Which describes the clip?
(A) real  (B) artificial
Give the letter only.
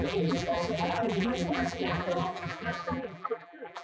B